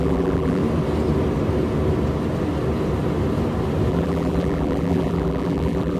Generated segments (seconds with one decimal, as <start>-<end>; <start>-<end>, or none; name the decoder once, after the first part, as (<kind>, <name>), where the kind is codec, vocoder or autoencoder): 0.0-0.6 (vocoder, BigVGAN v2); 3.9-6.0